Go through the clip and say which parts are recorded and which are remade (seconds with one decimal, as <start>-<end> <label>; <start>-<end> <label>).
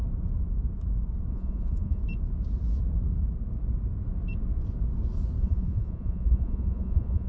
0.0-1.3 recorded; 1.3-2.0 remade; 2.0-5.4 recorded; 5.4-7.3 remade